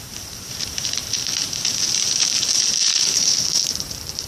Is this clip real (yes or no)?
no